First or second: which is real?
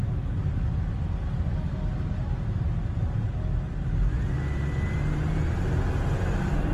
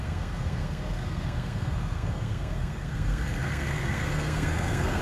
first